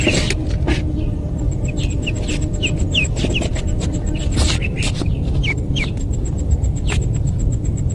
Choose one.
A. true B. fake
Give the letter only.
A